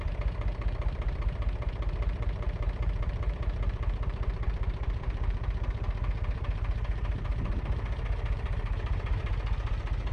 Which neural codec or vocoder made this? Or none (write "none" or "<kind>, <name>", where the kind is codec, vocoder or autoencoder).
vocoder, BigVGAN v2